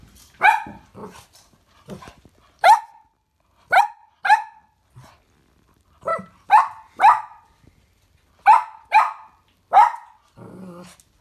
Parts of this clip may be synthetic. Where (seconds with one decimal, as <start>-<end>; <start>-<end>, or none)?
none